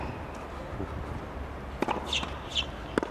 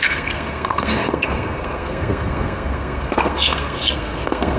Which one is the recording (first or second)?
first